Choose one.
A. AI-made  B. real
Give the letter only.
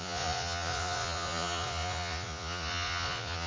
A